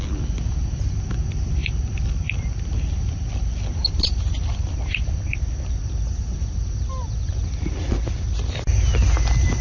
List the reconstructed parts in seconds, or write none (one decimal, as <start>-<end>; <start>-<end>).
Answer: none